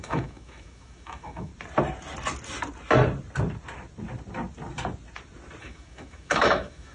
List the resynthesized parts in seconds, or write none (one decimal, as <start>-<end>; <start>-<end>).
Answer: 0.0-1.5; 5.6-6.9